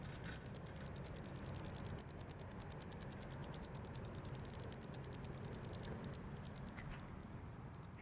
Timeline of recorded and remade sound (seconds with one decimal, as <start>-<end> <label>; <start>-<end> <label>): 0.0-3.4 recorded; 3.4-4.6 remade; 4.6-7.2 recorded; 7.2-8.0 remade